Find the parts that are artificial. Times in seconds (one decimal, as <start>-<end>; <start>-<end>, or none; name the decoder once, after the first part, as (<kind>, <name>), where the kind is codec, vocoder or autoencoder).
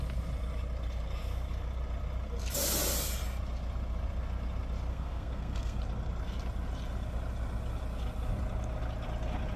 4.9-5.8 (codec, SNAC)